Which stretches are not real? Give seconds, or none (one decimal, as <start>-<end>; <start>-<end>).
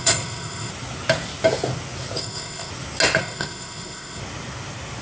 0.0-0.7; 2.2-2.7; 3.2-4.2